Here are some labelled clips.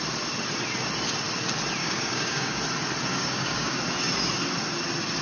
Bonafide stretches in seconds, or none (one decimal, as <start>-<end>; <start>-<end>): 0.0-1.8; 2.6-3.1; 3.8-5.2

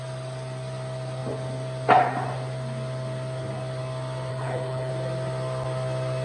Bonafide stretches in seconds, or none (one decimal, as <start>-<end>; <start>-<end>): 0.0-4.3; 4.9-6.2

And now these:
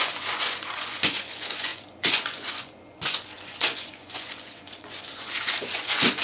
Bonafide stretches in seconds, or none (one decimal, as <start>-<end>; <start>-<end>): none